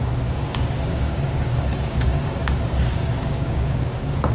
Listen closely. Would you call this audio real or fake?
fake